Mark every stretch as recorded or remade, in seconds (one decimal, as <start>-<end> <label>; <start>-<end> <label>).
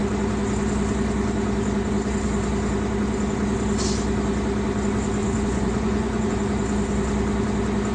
0.0-5.2 recorded; 5.2-6.3 remade; 6.3-7.9 recorded